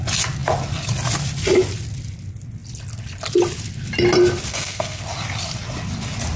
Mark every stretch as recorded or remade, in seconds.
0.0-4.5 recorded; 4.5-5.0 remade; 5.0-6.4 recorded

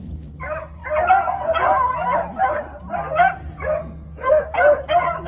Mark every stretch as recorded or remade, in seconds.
0.0-3.8 recorded; 3.8-4.4 remade; 4.4-5.3 recorded

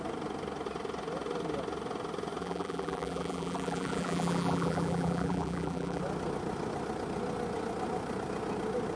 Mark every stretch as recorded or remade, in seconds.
0.0-2.4 recorded; 2.4-6.0 remade; 6.0-9.0 recorded

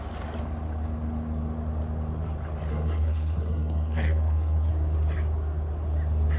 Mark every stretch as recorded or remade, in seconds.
0.0-2.7 recorded; 2.7-4.7 remade; 4.7-6.4 recorded

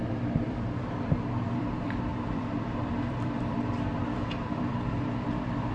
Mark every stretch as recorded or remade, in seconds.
0.0-5.7 remade

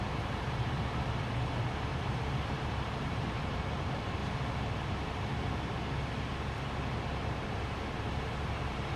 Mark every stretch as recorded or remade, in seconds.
0.0-4.2 remade; 4.2-7.1 recorded; 7.1-9.0 remade

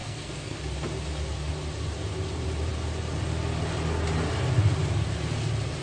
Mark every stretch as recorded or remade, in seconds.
0.0-0.6 remade; 0.6-5.8 recorded